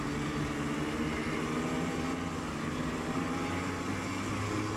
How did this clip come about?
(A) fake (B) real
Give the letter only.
B